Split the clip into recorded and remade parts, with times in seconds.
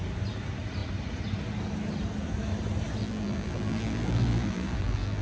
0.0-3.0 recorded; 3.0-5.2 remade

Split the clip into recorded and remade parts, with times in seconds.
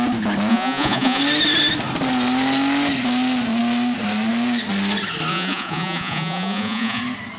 0.0-0.5 recorded; 0.5-1.2 remade; 1.2-5.3 recorded; 5.3-7.0 remade; 7.0-7.4 recorded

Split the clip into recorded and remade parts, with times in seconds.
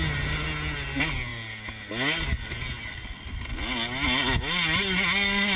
0.0-5.6 recorded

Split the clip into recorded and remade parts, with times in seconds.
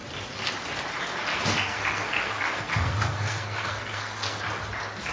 0.0-1.3 recorded; 1.3-4.4 remade; 4.4-5.1 recorded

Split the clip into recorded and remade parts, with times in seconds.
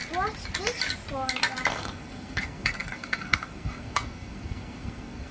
0.0-1.7 recorded; 1.7-5.3 remade